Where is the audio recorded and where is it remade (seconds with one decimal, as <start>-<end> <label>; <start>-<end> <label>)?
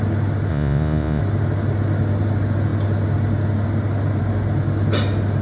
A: 0.0-0.5 recorded; 0.5-1.2 remade; 1.2-5.4 recorded